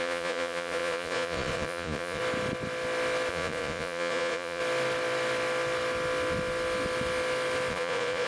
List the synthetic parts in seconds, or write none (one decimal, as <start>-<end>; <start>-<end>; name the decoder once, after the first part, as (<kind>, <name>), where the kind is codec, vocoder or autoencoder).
0.0-2.2 (vocoder, Vocos); 3.3-4.6; 7.7-8.3

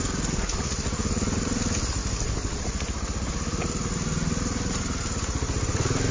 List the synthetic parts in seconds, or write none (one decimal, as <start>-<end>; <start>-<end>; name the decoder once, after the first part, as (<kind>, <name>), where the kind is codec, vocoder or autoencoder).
none

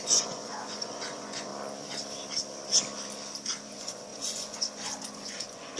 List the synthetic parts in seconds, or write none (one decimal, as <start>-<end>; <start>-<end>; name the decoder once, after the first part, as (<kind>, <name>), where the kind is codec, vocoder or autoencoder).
0.0-1.5 (vocoder, Vocos); 3.6-5.8

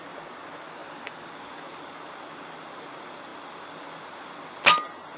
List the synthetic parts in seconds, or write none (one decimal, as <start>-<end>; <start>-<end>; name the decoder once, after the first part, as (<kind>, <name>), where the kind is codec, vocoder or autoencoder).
none

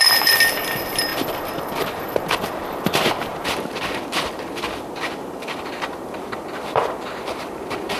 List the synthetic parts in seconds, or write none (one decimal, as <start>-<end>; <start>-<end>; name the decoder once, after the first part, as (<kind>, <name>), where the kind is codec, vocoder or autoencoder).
0.0-8.0 (vocoder, BigVGAN v2)

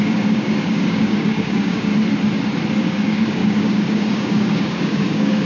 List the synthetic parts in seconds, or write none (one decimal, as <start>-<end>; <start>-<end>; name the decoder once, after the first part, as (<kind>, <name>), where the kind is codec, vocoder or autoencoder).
0.0-1.9 (codec, DAC); 2.8-5.4